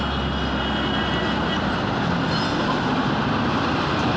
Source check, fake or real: real